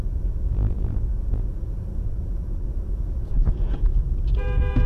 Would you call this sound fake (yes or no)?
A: yes